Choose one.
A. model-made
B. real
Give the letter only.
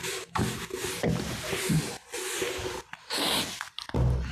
B